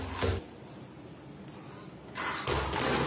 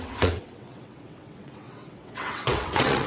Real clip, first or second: first